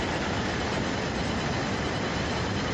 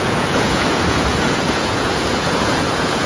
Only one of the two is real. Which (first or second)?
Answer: first